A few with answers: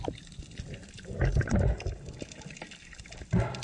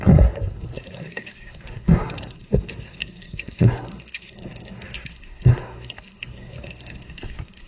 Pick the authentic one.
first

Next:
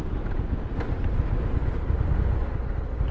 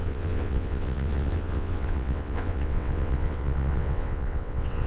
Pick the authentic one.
first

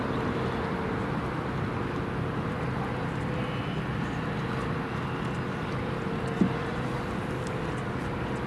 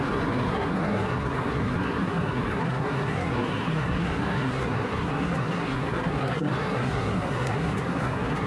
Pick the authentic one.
first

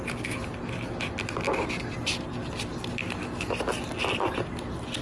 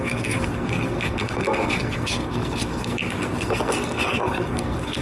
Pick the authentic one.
first